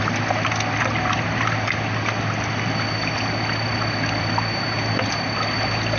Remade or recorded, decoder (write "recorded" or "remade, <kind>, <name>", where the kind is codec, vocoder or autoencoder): recorded